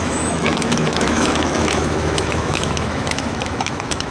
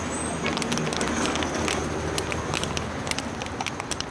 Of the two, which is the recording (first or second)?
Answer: second